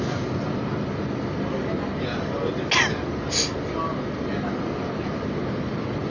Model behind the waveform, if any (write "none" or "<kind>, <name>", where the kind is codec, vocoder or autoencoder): none